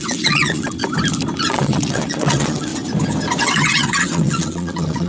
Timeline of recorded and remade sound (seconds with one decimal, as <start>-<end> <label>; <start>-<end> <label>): 0.0-0.8 remade; 0.8-1.5 recorded; 1.5-2.7 remade; 2.7-3.4 recorded; 3.4-5.1 remade